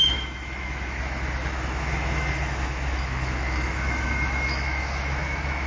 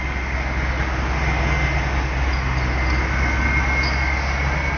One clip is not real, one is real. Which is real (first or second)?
second